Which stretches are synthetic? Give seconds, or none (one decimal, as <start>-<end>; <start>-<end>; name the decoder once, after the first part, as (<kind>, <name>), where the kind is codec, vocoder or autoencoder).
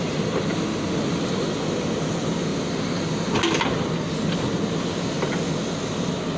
none